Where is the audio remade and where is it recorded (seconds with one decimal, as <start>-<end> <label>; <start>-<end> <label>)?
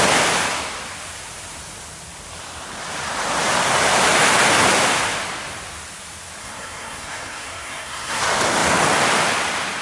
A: 0.0-6.4 recorded; 6.4-8.2 remade; 8.2-9.8 recorded